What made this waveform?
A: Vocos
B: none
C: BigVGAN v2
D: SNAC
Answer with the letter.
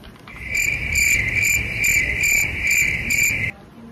B